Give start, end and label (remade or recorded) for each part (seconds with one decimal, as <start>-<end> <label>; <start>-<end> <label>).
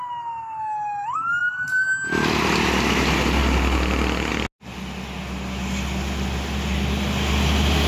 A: 0.0-7.9 recorded